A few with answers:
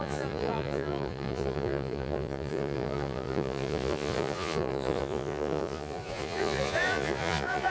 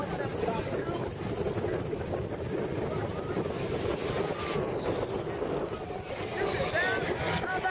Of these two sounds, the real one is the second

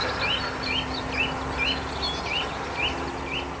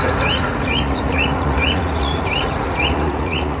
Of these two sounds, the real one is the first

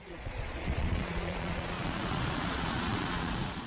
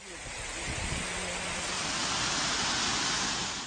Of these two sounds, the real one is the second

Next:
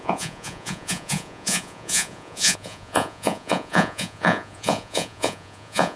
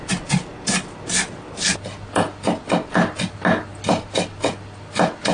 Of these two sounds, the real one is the second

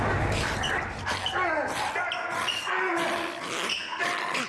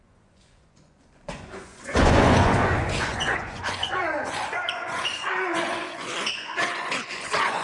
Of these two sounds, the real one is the first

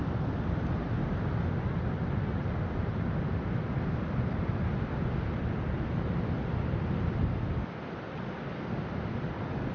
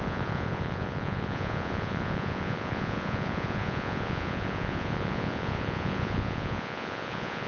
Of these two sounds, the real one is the first